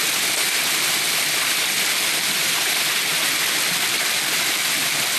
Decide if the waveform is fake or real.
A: fake